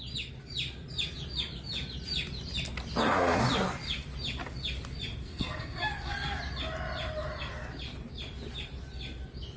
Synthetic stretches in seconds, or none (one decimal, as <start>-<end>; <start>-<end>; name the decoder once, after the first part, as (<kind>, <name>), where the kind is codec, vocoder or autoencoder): 5.2-6.4 (codec, SNAC)